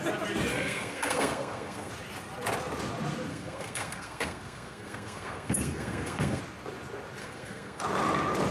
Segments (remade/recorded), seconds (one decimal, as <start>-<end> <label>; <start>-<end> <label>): 0.0-0.5 recorded; 0.5-1.9 remade; 1.9-3.3 recorded; 3.3-6.4 remade; 6.4-7.2 recorded; 7.2-7.8 remade; 7.8-8.5 recorded